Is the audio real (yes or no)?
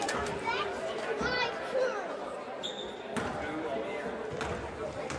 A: yes